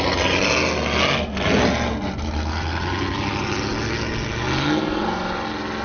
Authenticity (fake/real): real